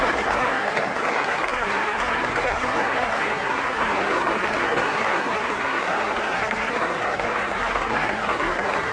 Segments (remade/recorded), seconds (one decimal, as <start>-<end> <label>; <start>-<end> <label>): 0.0-8.9 remade

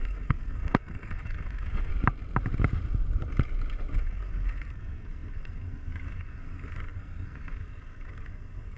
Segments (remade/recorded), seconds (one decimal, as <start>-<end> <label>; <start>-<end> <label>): 0.0-1.9 remade; 1.9-4.0 recorded; 4.0-8.8 remade

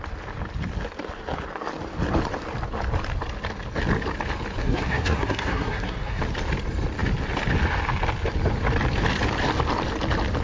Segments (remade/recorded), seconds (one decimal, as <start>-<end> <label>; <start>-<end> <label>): 0.0-4.6 recorded; 4.6-6.2 remade; 6.2-10.4 recorded

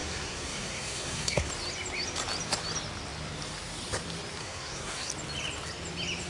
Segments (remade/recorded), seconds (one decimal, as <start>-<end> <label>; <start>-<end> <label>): 0.0-1.5 remade; 1.5-4.4 recorded; 4.4-5.1 remade; 5.1-6.3 recorded

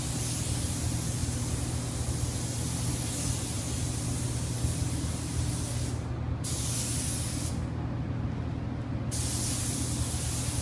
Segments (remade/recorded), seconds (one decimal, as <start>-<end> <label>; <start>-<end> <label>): 0.0-10.6 recorded